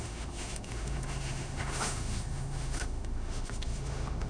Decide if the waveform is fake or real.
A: fake